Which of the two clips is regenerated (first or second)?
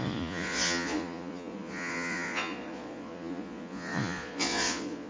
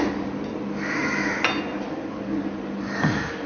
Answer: first